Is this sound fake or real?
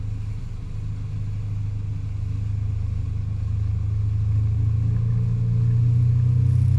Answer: real